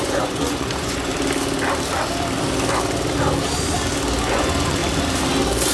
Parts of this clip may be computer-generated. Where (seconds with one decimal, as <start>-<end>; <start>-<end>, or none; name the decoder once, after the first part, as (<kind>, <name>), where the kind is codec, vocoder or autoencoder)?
0.0-1.1 (vocoder, Vocos); 4.3-4.8